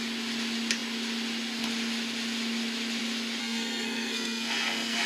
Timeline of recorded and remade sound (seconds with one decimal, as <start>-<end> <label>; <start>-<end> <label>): 0.0-3.4 recorded; 3.4-5.1 remade